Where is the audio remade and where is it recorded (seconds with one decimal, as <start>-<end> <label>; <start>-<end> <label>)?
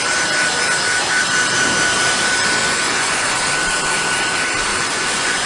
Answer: 0.0-2.6 recorded; 2.6-3.4 remade; 3.4-4.7 recorded; 4.7-5.5 remade